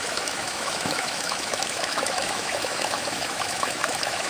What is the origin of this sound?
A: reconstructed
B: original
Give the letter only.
A